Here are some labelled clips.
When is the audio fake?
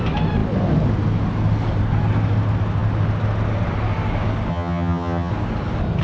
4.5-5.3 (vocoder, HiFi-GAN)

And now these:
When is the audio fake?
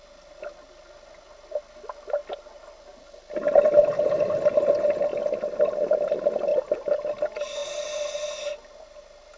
none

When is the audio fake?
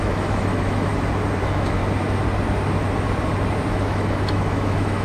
0.0-0.9 (autoencoder, DAC-VAE); 1.4-1.8; 3.7-5.0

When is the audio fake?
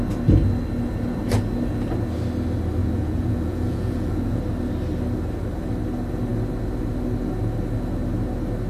2.8-4.4 (vocoder, Vocos)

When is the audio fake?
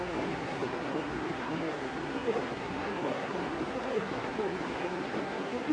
0.0-5.7 (codec, SNAC)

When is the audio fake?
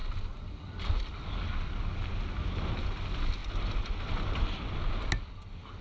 none